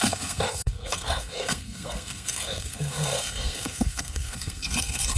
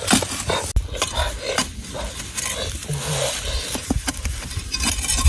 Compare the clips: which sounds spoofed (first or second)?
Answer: first